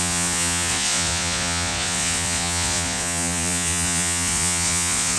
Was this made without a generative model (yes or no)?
no